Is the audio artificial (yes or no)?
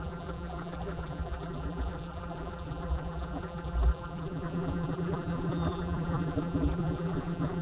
yes